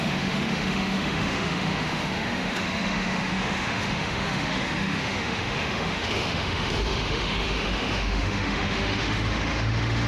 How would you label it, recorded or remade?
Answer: remade